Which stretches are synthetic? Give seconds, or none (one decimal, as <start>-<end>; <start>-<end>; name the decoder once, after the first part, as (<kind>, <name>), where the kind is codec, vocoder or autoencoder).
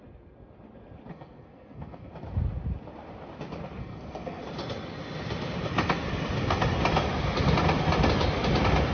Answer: 1.1-2.1 (codec, SNAC); 3.8-4.4